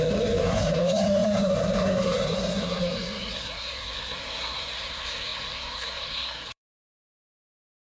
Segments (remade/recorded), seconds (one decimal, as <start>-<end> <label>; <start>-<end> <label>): 0.0-7.8 remade